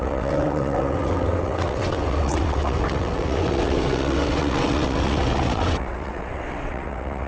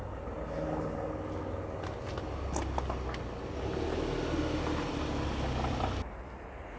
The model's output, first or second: first